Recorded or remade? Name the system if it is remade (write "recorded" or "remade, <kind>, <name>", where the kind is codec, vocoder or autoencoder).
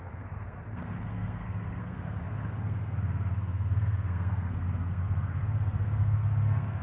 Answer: remade, codec, SNAC